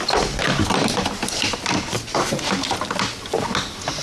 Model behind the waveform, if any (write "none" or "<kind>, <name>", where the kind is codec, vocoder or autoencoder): none